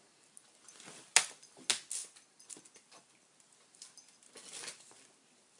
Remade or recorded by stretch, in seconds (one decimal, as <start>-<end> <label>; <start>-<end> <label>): 0.0-5.6 recorded